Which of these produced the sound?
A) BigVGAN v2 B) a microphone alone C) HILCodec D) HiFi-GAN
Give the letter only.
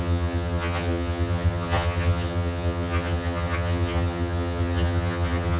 D